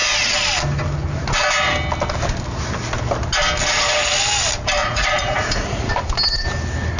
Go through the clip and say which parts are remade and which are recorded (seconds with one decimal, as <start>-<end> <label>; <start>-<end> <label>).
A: 0.0-4.8 recorded; 4.8-5.9 remade; 5.9-7.0 recorded